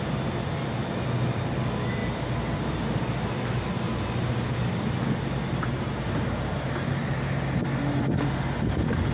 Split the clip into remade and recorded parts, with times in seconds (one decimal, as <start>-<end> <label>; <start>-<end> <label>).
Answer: 0.0-9.1 recorded